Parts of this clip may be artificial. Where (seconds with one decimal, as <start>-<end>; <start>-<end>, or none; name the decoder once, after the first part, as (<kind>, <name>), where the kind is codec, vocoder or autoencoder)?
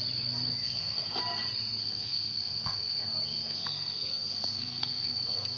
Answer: 0.6-1.2 (codec, SNAC); 1.8-5.6